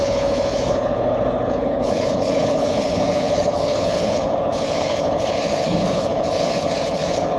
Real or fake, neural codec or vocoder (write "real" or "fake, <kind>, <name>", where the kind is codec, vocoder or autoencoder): fake, codec, HILCodec